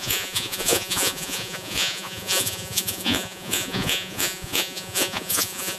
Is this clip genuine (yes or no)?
no